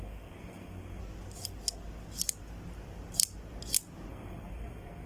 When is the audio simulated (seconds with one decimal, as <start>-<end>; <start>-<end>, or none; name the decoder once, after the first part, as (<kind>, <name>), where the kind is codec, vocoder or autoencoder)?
0.0-1.0 (codec, SNAC); 4.1-5.1